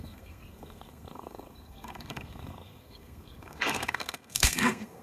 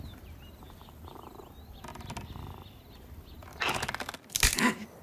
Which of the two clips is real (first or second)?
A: second